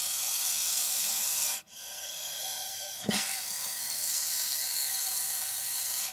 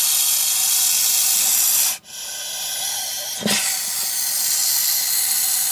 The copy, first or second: first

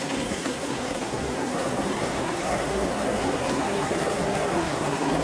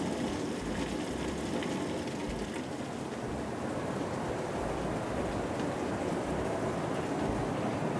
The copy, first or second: first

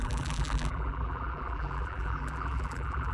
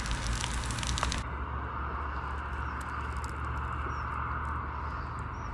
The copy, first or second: first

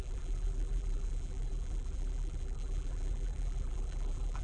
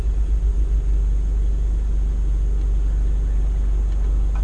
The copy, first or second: first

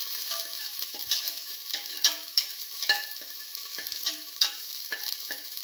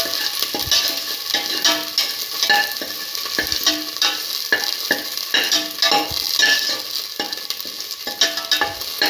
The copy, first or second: first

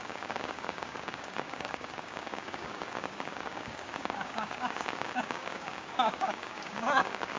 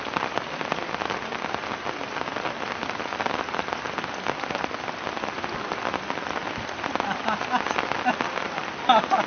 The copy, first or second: first